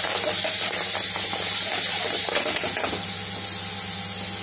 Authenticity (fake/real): real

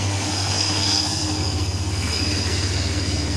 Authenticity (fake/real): fake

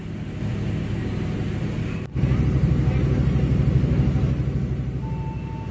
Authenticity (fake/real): real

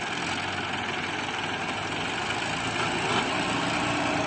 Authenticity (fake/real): real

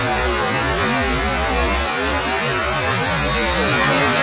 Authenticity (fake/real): real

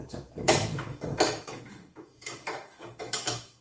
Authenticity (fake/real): fake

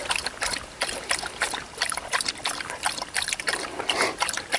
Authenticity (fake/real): real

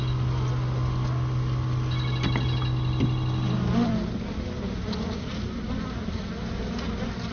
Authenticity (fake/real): real